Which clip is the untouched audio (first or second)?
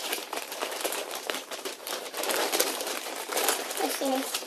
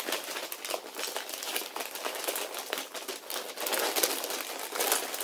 second